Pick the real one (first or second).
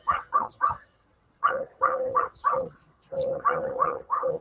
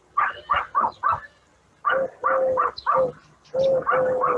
second